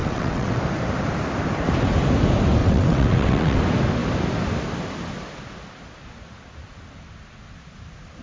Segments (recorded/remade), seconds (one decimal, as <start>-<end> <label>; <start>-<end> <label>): 0.0-0.6 remade; 0.6-2.6 recorded; 2.6-3.6 remade; 3.6-8.2 recorded